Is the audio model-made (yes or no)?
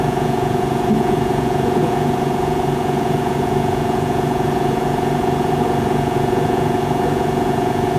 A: yes